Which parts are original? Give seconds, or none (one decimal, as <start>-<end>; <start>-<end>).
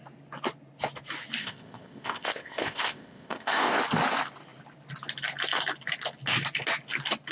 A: 0.0-1.4; 3.8-7.3